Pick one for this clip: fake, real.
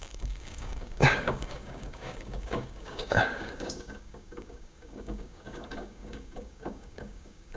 fake